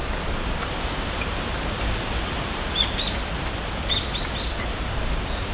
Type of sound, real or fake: fake